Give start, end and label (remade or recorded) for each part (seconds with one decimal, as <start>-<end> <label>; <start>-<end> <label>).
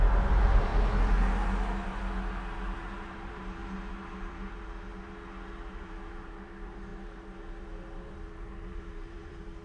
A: 0.0-0.7 remade; 0.7-2.8 recorded; 2.8-3.6 remade; 3.6-4.3 recorded; 4.3-4.9 remade; 4.9-5.7 recorded; 5.7-9.6 remade